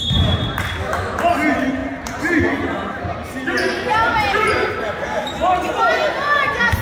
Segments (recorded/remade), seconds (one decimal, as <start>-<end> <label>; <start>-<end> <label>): 0.0-0.8 recorded; 0.8-1.3 remade; 1.3-6.8 recorded